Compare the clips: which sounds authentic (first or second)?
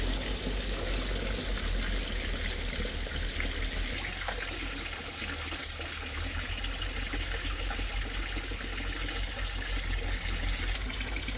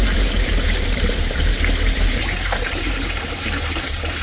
first